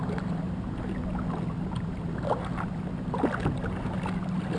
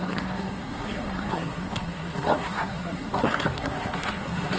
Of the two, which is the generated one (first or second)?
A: second